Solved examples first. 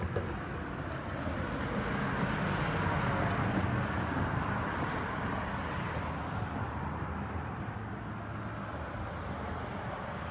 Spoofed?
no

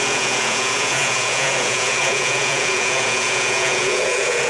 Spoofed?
yes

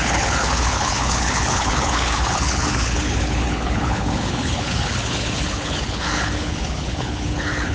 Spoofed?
yes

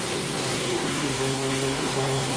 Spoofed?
yes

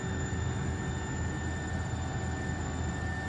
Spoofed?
no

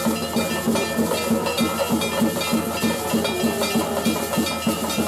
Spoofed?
no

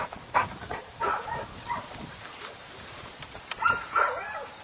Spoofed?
yes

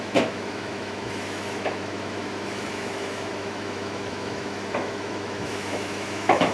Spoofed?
yes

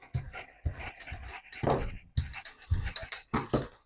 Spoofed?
no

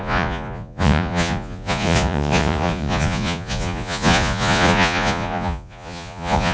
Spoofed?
yes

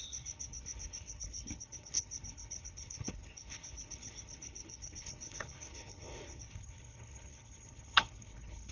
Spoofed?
yes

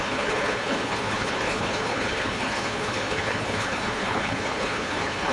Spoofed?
yes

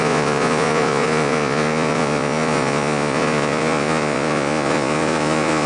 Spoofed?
yes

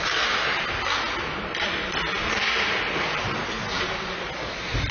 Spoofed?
no